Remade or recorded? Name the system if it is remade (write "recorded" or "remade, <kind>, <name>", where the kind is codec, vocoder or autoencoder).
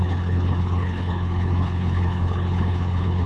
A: remade, codec, HILCodec